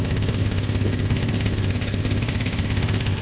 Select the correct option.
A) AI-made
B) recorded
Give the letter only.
A